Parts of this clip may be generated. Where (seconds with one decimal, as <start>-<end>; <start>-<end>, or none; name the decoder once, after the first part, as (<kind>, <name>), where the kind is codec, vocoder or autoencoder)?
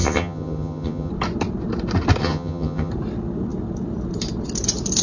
0.0-1.1 (vocoder, HiFi-GAN); 2.2-2.9